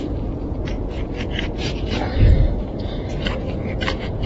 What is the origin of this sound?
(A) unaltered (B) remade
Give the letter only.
B